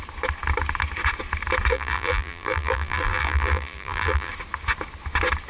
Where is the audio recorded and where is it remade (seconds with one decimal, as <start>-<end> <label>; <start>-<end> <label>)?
0.0-1.7 recorded; 1.7-4.3 remade; 4.3-5.5 recorded